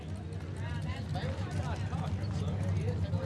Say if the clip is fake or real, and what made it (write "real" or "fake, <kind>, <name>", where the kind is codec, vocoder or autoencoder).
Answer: real